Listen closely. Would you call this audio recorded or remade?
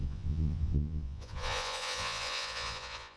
remade